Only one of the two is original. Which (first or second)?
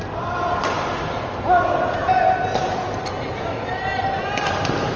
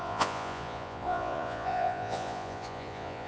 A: first